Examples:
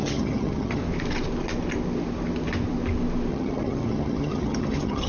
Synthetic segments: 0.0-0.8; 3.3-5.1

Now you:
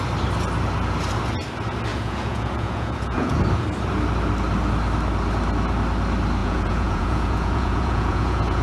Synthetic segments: 1.9-3.4; 6.4-8.6

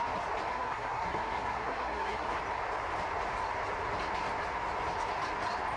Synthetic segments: 0.5-2.4